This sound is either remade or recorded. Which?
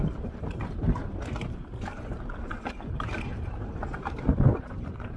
remade